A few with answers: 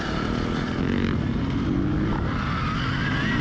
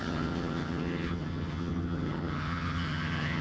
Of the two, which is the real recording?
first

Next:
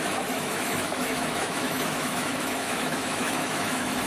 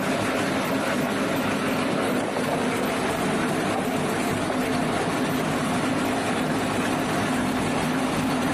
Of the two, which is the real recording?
second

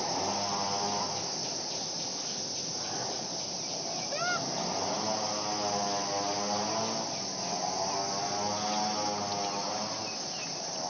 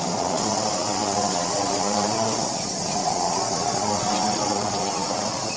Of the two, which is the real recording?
first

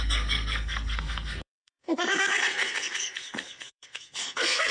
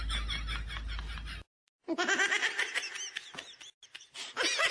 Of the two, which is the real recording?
second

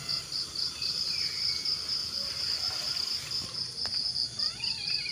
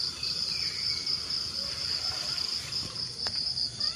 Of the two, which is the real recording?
first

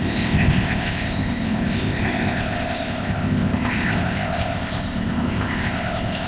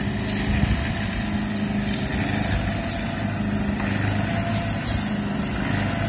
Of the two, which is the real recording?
second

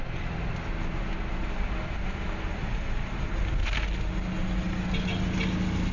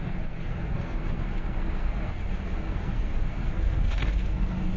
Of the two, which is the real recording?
first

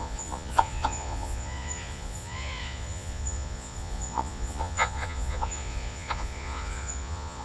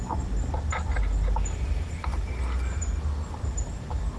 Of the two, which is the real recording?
second